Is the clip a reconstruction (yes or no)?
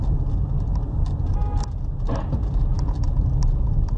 no